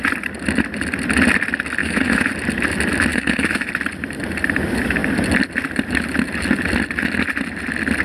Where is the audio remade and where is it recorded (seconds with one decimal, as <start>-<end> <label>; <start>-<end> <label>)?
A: 0.0-1.8 recorded; 1.8-2.3 remade; 2.3-3.1 recorded; 3.1-3.7 remade; 3.7-8.0 recorded